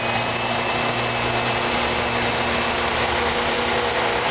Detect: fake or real real